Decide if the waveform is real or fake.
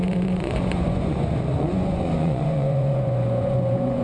fake